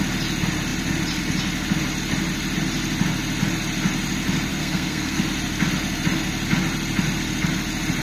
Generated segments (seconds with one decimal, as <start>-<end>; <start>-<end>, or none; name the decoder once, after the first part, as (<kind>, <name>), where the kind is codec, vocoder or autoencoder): 4.5-5.2 (codec, SNAC)